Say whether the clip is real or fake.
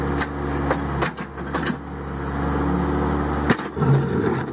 real